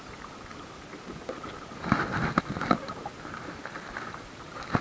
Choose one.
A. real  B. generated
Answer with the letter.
A